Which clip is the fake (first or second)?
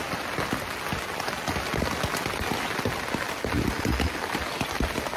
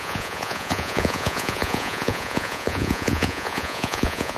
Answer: second